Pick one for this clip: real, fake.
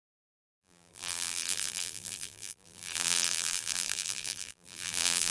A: fake